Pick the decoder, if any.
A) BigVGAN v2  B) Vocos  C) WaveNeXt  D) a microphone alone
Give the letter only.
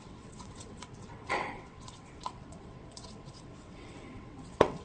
C